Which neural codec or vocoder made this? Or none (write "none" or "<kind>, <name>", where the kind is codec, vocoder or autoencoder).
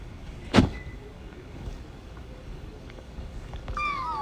codec, DAC